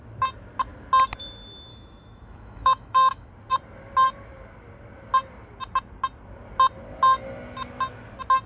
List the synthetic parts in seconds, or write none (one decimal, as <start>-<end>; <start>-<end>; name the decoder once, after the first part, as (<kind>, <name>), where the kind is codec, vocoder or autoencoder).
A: 1.7-3.3 (autoencoder, DAC-VAE)